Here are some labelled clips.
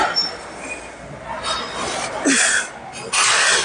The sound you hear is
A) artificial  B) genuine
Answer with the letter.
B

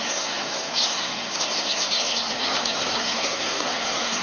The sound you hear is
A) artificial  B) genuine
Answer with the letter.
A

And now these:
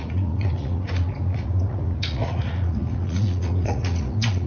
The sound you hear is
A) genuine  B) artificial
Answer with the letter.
B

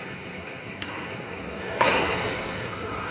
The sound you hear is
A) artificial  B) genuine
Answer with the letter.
A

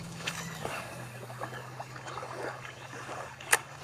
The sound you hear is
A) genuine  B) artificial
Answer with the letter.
B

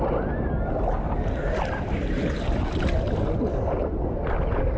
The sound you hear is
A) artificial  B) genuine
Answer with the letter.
B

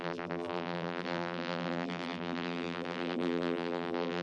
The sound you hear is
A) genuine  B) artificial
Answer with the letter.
B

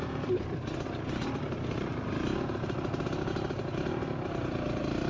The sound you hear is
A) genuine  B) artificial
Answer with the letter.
B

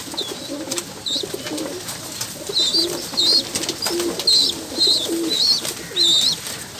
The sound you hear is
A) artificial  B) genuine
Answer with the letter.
B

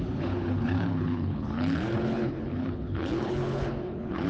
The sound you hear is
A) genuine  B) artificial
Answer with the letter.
B